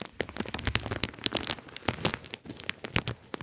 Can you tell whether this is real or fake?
real